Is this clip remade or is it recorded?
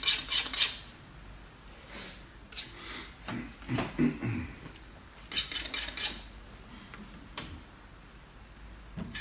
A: recorded